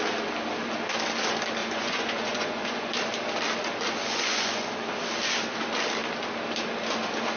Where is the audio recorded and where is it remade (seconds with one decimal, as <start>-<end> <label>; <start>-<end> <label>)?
0.0-1.6 recorded; 1.6-2.9 remade; 2.9-4.0 recorded; 4.0-4.7 remade; 4.7-7.4 recorded